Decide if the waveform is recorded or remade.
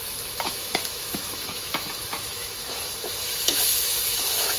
remade